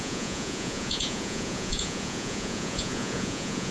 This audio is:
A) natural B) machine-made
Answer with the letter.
B